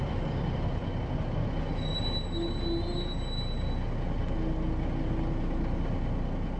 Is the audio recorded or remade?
recorded